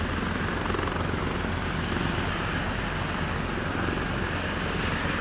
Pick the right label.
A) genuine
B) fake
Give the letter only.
A